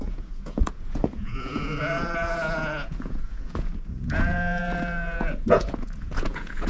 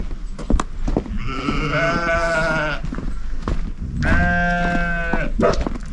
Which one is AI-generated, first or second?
first